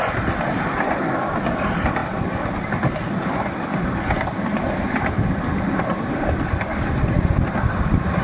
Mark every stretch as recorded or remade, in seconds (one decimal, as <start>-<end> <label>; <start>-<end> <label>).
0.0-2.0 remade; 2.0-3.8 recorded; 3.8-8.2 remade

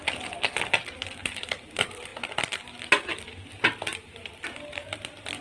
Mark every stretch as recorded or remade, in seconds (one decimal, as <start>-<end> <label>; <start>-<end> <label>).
0.0-5.4 recorded

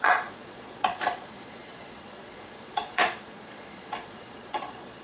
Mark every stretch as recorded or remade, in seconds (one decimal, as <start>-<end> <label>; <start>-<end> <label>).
0.0-5.0 remade

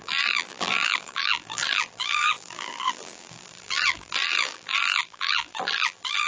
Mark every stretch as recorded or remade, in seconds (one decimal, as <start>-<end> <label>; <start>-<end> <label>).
0.0-6.3 remade

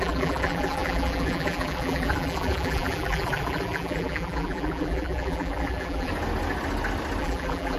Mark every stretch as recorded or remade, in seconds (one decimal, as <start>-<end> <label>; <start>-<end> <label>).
0.0-6.1 remade; 6.1-7.2 recorded; 7.2-7.8 remade

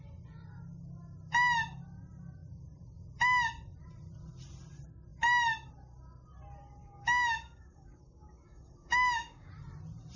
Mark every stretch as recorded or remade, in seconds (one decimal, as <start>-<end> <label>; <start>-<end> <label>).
0.0-6.8 recorded; 6.8-9.5 remade; 9.5-10.2 recorded

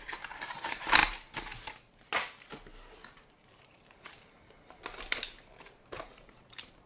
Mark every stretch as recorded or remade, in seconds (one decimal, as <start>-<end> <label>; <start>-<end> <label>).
0.0-1.0 remade; 1.0-3.6 recorded; 3.6-6.9 remade